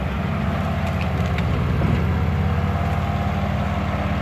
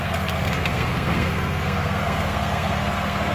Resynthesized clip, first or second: second